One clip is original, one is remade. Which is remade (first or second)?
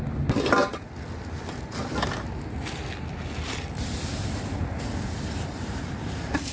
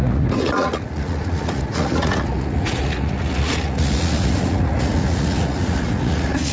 second